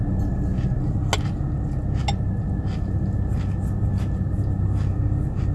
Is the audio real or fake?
real